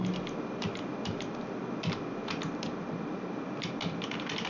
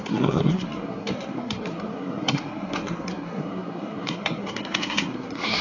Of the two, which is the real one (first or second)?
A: first